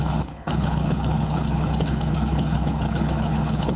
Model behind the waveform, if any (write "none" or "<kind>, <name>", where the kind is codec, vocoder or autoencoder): codec, HILCodec